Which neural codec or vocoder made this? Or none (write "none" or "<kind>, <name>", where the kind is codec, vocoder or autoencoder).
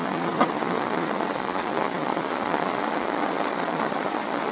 vocoder, Vocos